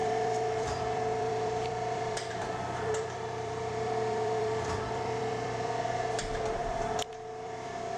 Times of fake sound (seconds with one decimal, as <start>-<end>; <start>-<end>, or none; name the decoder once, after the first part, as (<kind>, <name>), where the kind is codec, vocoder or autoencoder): 0.0-8.0 (vocoder, BigVGAN v2)